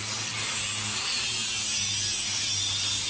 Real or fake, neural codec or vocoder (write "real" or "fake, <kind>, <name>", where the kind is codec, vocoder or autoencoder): real